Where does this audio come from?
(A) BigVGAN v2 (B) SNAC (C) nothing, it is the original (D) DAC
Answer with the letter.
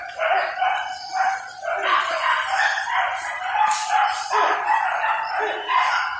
A